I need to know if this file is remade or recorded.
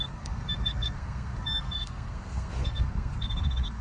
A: remade